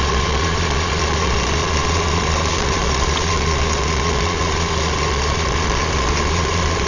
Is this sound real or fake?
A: fake